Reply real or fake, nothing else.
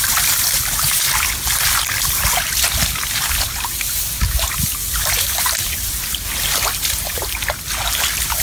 real